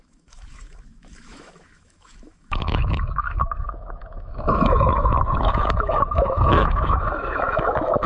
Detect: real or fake fake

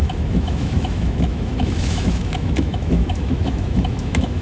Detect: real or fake fake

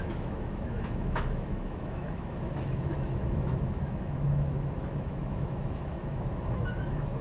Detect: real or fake fake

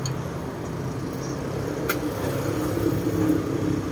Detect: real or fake real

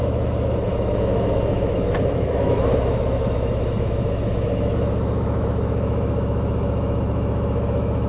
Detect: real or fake fake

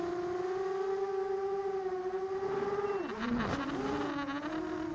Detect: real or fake real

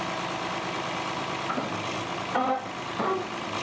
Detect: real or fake real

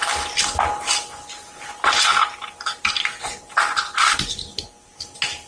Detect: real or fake real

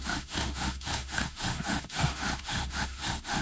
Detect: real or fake fake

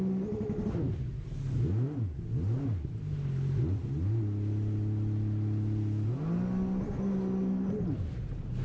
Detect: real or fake real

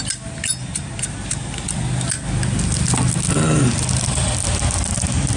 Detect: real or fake real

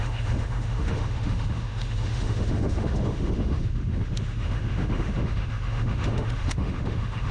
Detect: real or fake fake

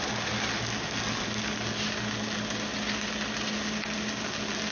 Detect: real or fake real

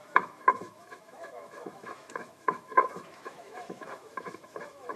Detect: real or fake fake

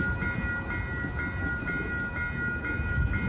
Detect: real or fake real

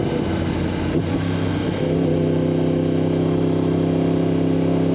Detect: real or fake real